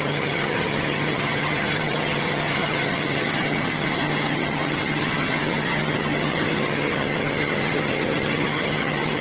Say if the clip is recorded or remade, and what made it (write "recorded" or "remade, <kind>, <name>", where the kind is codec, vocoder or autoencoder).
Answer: remade, vocoder, HiFi-GAN